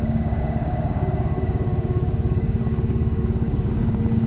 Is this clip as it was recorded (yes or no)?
no